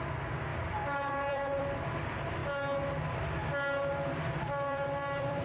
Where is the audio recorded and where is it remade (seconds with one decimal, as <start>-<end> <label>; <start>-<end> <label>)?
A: 0.0-2.4 remade; 2.4-4.3 recorded; 4.3-5.4 remade